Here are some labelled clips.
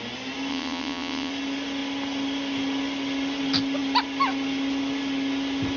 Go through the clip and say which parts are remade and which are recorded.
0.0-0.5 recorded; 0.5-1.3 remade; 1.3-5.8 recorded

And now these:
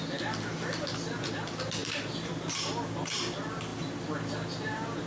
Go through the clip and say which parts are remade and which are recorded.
0.0-5.1 recorded